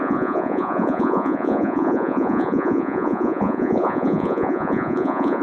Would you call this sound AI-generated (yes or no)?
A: yes